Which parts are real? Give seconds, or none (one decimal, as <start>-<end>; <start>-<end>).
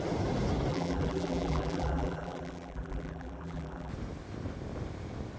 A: 0.0-0.7; 3.9-5.4